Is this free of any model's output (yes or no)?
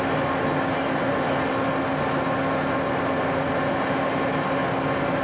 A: yes